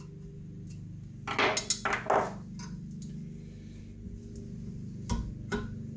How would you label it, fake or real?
real